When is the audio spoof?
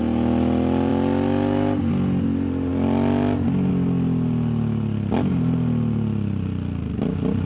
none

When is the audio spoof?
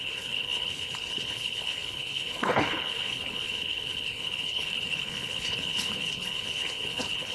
0.0-7.3 (codec, HILCodec)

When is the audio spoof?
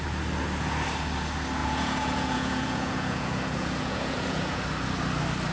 1.6-4.6 (vocoder, Vocos)